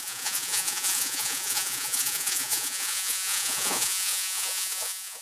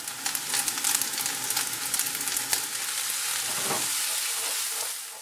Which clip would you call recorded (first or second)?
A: second